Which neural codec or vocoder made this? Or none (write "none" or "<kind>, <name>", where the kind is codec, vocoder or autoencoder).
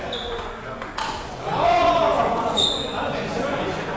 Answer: vocoder, Vocos